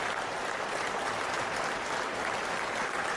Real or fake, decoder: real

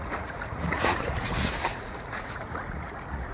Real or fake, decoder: fake, vocoder, Vocos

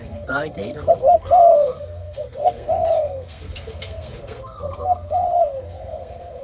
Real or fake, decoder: fake, codec, SNAC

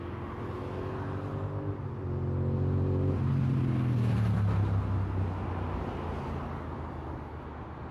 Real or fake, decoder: real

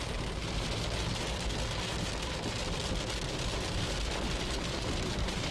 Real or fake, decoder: real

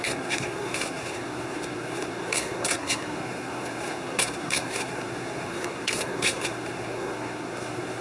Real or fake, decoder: fake, codec, SNAC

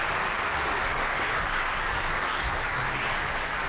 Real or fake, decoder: fake, codec, DAC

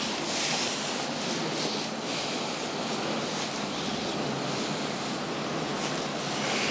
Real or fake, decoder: real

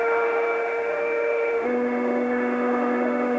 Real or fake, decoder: fake, autoencoder, DAC-VAE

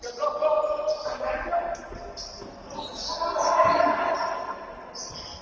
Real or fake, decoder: real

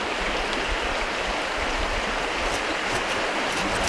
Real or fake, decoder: real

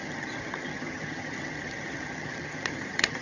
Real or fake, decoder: fake, vocoder, HiFi-GAN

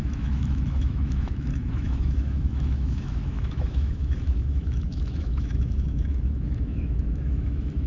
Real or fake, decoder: fake, autoencoder, DAC-VAE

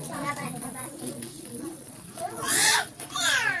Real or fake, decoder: fake, vocoder, Vocos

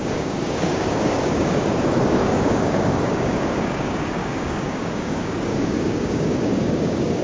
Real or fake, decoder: fake, codec, DAC